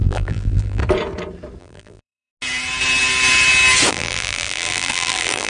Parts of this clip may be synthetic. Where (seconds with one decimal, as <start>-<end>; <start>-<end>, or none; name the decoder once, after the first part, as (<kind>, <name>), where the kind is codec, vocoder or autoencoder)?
0.0-0.8 (vocoder, BigVGAN v2); 1.6-2.3; 3.9-5.5